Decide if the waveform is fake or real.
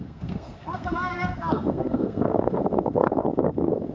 fake